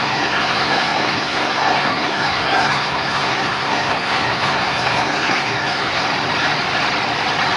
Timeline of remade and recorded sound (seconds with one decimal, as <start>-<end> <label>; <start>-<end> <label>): 0.0-6.0 remade; 6.0-7.6 recorded